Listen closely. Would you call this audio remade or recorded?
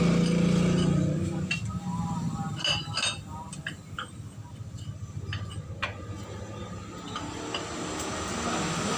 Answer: recorded